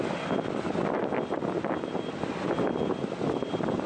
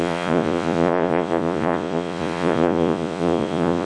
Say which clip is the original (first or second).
first